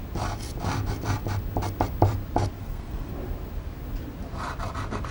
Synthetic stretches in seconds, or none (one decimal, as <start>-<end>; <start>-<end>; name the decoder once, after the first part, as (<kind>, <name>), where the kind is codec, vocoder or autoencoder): 2.6-3.1 (codec, SNAC)